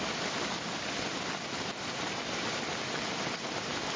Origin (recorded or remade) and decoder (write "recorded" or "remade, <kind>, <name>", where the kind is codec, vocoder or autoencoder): recorded